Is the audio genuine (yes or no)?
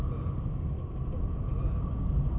yes